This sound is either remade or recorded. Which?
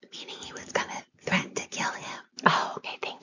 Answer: recorded